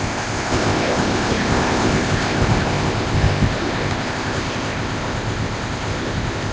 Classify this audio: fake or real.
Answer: fake